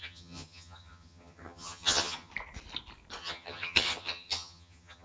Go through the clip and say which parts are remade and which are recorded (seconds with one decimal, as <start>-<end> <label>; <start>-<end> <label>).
0.0-2.3 remade; 2.3-3.2 recorded; 3.2-5.0 remade